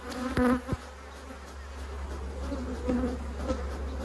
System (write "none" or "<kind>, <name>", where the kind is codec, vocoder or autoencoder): none